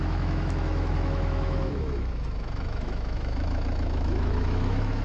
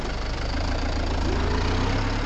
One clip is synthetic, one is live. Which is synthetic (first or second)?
first